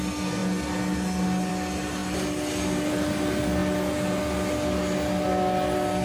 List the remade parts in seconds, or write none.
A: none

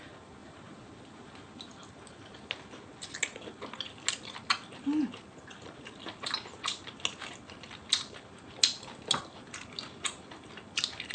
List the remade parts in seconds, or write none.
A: 0.4-0.9 (vocoder, BigVGAN v2)

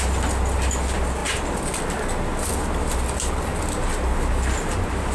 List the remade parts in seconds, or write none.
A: none

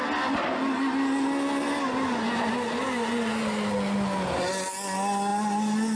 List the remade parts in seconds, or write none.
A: none

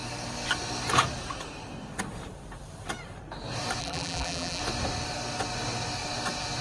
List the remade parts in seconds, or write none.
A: 3.8-4.6 (vocoder, BigVGAN v2)

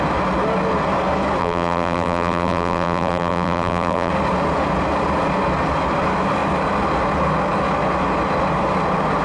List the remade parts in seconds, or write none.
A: 1.4-4.1 (vocoder, BigVGAN v2)

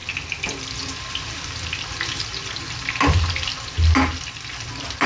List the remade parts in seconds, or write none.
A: 2.8-3.5 (vocoder, BigVGAN v2)

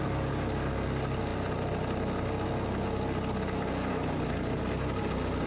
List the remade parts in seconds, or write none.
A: none